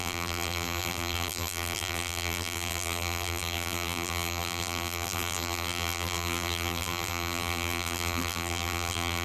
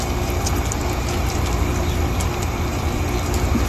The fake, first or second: first